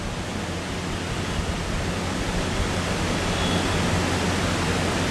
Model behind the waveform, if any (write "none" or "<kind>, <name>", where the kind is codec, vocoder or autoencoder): none